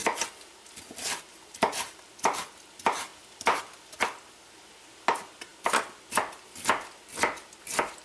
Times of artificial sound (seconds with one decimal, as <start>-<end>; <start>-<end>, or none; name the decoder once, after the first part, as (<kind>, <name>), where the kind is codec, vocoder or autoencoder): none

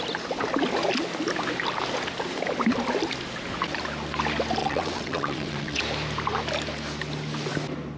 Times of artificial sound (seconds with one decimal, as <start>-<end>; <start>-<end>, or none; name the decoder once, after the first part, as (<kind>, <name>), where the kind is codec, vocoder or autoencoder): 4.6-5.8 (vocoder, WaveNeXt)

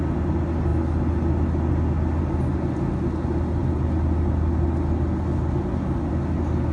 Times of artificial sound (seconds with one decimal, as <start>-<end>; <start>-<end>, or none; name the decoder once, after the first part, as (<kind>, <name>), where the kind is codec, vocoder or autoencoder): none

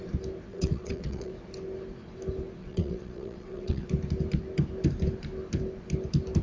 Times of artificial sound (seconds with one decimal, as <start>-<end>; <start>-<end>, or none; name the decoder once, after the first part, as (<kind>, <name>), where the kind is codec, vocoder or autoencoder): 0.5-1.3 (vocoder, WaveNeXt); 2.6-3.9

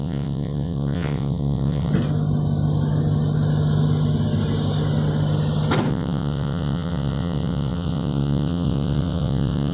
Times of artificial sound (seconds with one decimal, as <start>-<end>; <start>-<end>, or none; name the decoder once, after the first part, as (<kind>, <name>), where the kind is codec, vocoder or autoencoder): 0.0-1.9 (vocoder, WaveNeXt); 5.9-9.7

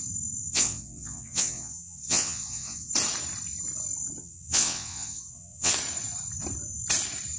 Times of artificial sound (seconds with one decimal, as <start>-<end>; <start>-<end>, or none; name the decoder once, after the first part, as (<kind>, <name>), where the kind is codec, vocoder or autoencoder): 0.5-2.9 (vocoder, WaveNeXt); 4.2-5.7

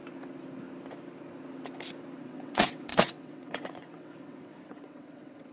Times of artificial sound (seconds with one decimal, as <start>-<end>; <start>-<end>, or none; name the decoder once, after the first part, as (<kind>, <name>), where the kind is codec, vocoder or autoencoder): 2.2-5.5 (vocoder, WaveNeXt)

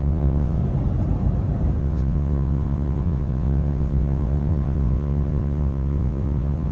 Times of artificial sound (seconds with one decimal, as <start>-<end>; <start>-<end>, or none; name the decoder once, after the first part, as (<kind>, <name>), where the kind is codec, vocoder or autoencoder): 0.0-0.6 (vocoder, WaveNeXt); 1.8-6.7